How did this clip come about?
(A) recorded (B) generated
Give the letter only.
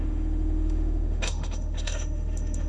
B